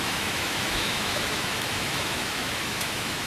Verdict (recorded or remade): remade